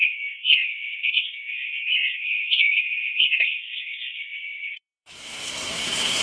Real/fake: fake